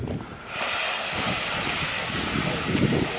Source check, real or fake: real